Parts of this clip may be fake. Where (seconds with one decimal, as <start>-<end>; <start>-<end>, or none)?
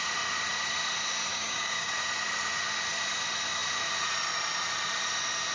1.3-1.9